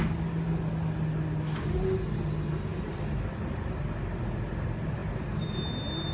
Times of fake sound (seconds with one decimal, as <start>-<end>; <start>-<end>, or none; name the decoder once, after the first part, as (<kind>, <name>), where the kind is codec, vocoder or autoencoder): none